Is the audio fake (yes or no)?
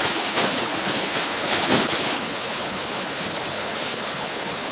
yes